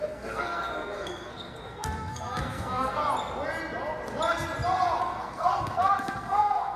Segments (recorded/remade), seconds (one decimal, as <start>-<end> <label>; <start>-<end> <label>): 0.0-3.0 remade; 3.0-5.0 recorded; 5.0-6.8 remade